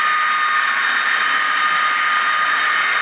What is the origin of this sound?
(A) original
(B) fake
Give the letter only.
A